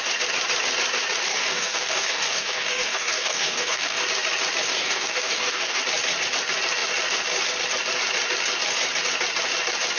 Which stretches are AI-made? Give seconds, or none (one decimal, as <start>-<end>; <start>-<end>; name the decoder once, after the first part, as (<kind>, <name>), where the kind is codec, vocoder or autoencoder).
1.3-4.0 (codec, DAC); 4.7-5.8